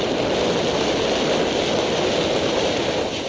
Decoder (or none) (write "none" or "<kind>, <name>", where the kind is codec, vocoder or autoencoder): none